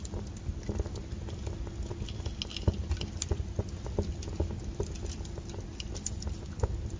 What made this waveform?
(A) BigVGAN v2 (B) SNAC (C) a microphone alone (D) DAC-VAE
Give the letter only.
C